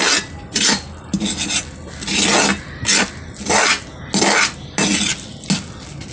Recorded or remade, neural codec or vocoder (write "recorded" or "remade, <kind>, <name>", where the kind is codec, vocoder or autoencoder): recorded